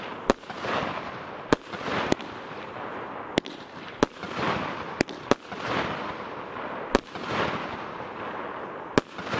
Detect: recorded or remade recorded